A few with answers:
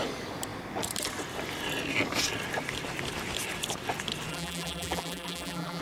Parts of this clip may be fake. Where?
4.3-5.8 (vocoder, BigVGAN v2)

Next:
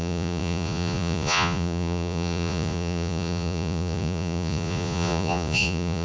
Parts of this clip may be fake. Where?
0.0-6.0 (vocoder, Vocos)

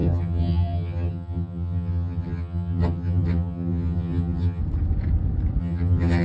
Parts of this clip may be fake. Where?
0.0-4.6 (vocoder, HiFi-GAN); 5.6-6.2